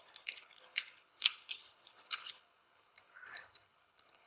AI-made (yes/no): yes